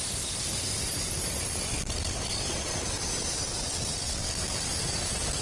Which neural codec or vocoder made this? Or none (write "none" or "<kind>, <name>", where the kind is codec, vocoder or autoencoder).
vocoder, BigVGAN v2